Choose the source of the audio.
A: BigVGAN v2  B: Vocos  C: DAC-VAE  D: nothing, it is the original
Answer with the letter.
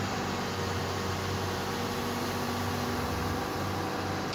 D